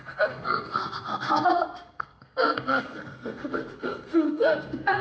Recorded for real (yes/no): no